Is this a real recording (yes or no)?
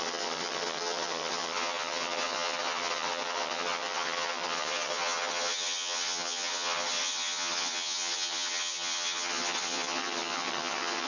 no